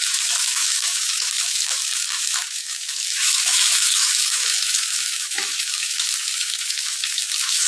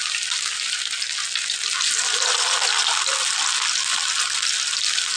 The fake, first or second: first